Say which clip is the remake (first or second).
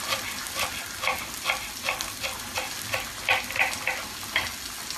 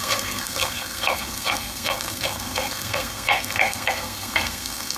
second